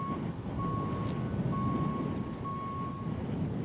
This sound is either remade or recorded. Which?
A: recorded